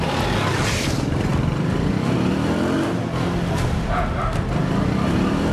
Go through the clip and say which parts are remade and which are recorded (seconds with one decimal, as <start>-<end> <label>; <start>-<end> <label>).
0.0-5.5 recorded